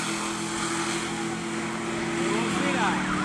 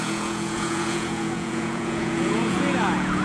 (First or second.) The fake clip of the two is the second